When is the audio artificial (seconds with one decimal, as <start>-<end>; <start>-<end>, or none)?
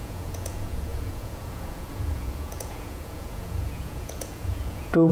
0.0-5.1